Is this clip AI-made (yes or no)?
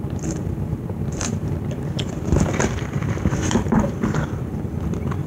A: yes